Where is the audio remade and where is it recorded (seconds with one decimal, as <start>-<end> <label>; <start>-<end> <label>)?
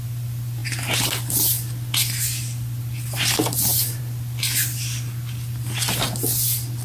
0.0-6.8 recorded